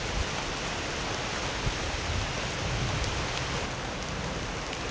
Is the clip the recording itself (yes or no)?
yes